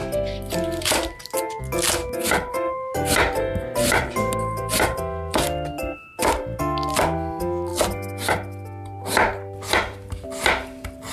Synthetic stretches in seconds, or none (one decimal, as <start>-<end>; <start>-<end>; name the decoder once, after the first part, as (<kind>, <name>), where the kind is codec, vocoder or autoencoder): 0.0-1.4 (vocoder, BigVGAN v2); 2.5-6.6